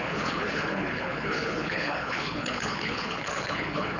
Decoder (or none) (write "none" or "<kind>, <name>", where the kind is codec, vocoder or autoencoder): codec, HILCodec